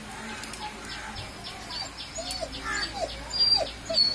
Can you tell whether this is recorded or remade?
recorded